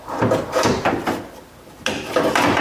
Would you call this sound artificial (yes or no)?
no